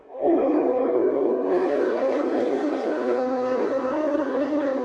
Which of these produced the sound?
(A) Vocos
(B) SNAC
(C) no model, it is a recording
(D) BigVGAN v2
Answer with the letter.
B